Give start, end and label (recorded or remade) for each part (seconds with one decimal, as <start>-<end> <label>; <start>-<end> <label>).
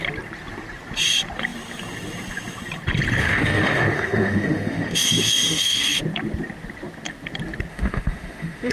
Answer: 0.0-3.2 recorded; 3.2-6.0 remade; 6.0-7.7 recorded; 7.7-8.7 remade